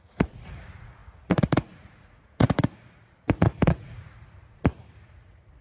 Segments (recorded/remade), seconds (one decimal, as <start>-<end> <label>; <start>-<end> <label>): 0.0-5.6 remade